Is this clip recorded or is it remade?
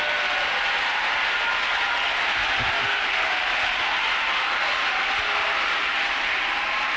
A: recorded